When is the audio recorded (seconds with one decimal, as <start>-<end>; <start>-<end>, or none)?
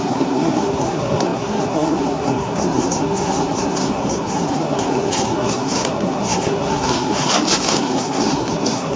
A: none